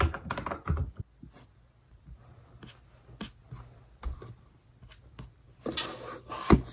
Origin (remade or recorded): recorded